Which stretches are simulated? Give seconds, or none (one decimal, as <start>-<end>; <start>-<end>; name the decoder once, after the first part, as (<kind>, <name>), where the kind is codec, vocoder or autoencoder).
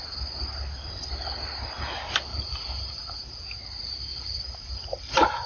2.3-3.4 (vocoder, BigVGAN v2); 4.1-5.5